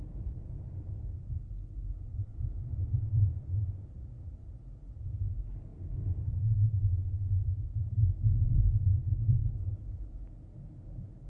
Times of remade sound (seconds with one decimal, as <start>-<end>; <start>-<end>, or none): 9.0-10.1